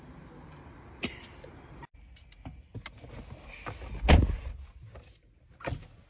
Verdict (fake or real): real